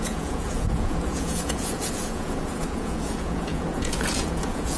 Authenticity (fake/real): fake